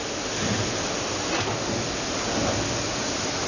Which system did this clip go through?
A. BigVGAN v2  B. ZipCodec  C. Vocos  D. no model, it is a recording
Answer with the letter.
D